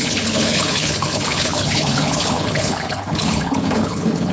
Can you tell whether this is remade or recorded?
remade